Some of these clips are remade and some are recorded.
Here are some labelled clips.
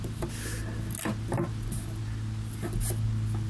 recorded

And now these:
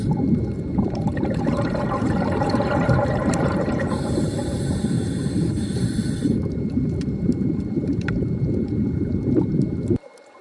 remade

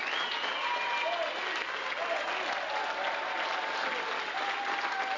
recorded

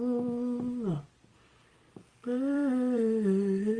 remade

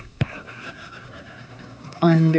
remade